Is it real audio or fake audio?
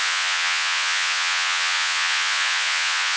fake